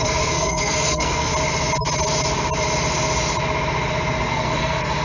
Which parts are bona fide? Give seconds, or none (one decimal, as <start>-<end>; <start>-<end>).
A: 1.3-4.3